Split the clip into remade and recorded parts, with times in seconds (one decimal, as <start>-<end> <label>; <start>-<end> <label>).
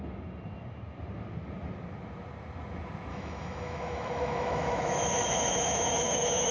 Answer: 0.0-3.1 recorded; 3.1-6.5 remade